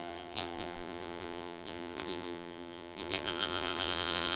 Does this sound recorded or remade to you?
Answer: remade